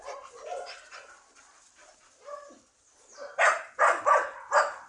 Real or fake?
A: real